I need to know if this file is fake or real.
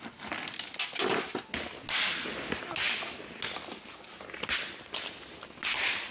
real